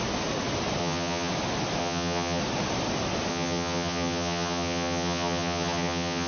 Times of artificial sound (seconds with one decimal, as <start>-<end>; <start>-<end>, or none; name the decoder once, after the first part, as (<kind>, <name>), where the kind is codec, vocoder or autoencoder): 0.8-1.3 (vocoder, HiFi-GAN); 1.8-2.4; 3.3-6.3

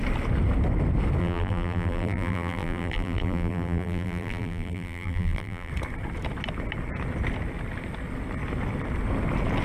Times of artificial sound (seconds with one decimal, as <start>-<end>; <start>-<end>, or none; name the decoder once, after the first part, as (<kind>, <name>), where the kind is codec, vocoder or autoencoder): 1.2-5.7 (vocoder, BigVGAN v2)

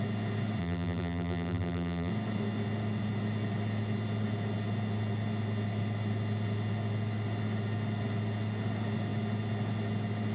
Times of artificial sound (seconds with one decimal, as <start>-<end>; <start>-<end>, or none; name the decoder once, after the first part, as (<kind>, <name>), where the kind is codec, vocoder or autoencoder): 0.6-2.1 (vocoder, BigVGAN v2)

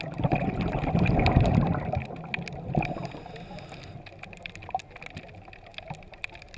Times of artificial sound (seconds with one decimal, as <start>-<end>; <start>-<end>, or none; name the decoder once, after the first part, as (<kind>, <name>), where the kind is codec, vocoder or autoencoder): none

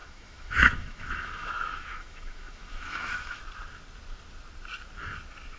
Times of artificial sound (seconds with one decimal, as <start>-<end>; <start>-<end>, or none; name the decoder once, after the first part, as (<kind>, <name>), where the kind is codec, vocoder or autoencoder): 0.0-3.4 (autoencoder, DAC-VAE)

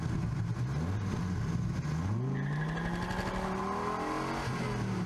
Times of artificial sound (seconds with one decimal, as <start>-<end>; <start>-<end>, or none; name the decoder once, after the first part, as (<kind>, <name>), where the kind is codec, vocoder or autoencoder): none